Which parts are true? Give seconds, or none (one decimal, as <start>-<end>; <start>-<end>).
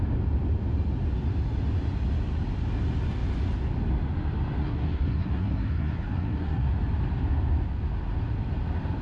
0.0-4.6; 6.7-9.0